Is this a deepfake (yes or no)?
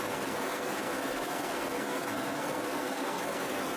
yes